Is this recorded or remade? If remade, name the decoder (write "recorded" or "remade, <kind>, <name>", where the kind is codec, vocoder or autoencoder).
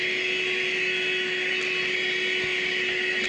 recorded